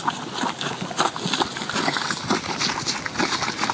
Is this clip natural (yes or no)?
yes